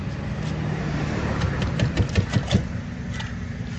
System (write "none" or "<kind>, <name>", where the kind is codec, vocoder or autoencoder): none